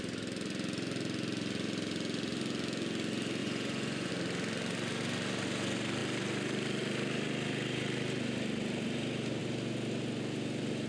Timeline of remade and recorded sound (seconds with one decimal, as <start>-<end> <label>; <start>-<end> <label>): 0.0-3.4 recorded; 3.4-4.1 remade; 4.1-10.9 recorded